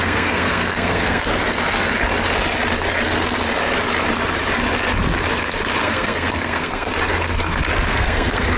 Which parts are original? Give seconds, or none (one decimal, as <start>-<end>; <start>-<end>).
1.3-5.8; 6.9-7.9